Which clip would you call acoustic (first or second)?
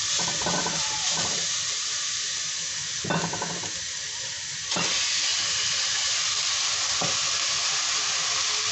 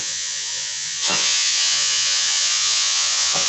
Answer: first